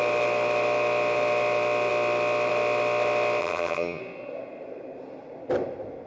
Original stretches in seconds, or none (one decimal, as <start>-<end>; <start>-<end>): 0.0-3.4; 4.0-6.1